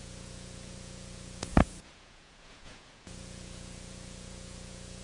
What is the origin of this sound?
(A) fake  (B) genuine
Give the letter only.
A